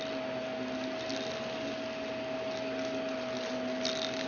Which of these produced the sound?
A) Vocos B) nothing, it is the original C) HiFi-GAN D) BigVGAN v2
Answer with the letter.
B